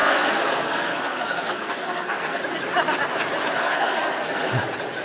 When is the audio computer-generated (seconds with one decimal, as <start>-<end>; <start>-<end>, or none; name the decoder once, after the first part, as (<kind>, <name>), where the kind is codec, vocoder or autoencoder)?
0.0-2.4 (codec, SNAC); 3.6-4.5